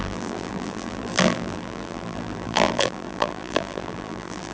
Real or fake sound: fake